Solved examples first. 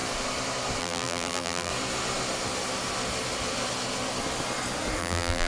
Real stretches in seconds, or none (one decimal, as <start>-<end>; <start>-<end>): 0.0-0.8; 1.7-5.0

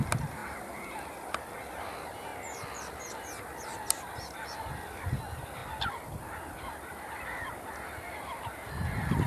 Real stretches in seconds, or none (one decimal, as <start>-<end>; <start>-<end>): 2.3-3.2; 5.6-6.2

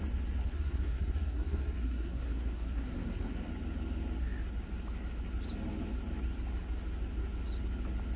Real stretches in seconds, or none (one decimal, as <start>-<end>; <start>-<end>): 0.0-0.4; 3.5-8.2